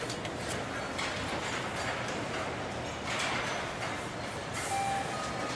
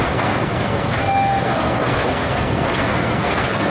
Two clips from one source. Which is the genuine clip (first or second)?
first